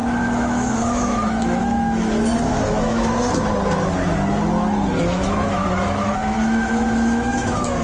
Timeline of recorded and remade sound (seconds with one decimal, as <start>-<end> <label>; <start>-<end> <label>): 0.0-3.0 remade; 3.0-5.0 recorded; 5.0-7.8 remade